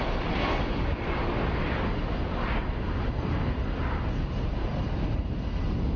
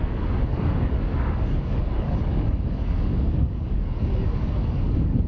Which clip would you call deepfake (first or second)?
second